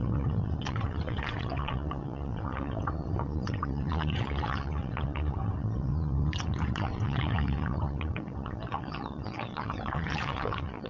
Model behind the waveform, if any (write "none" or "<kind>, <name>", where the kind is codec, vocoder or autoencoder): vocoder, WaveNeXt